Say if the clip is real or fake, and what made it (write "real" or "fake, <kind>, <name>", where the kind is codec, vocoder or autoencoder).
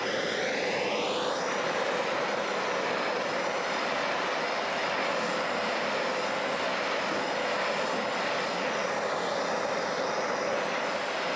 real